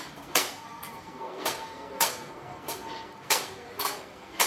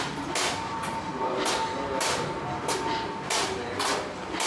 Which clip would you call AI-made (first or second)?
first